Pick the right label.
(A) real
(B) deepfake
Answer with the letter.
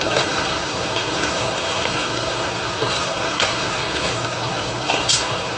B